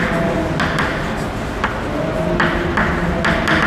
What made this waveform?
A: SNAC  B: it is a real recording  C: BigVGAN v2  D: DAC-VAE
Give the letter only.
B